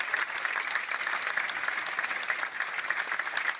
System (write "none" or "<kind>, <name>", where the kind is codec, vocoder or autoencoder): none